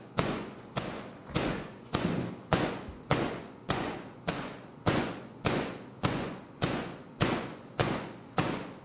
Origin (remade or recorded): remade